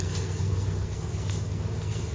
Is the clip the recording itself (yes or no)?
no